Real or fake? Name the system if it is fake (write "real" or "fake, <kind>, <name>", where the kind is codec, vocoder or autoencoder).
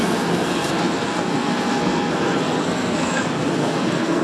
fake, codec, SNAC